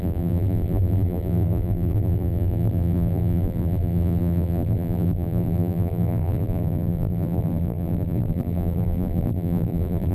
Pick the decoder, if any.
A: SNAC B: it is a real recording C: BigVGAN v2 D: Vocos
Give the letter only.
C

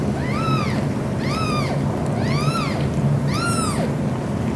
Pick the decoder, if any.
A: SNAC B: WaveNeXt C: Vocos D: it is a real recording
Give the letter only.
D